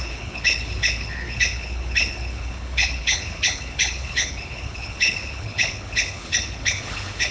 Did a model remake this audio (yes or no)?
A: yes